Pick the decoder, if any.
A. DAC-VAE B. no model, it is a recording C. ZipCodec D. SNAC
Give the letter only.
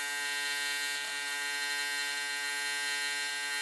B